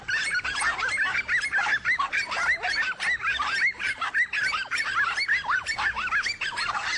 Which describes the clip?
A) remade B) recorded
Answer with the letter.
B